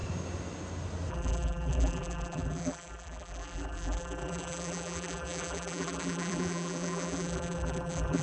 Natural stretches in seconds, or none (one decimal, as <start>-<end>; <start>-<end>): 0.0-1.1